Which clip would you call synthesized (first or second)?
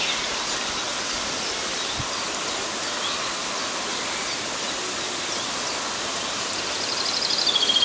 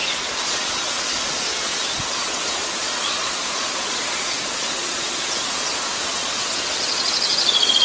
second